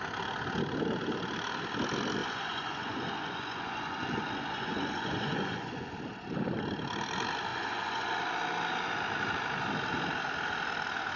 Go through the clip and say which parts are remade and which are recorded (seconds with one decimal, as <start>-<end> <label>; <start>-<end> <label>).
0.0-2.2 recorded; 2.2-5.9 remade; 5.9-7.5 recorded; 7.5-8.1 remade; 8.1-11.2 recorded